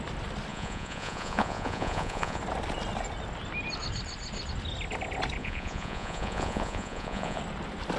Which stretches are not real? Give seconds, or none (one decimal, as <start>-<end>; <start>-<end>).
0.5-2.4; 5.4-7.4